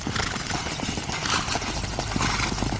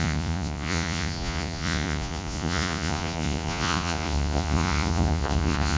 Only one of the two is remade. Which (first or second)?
second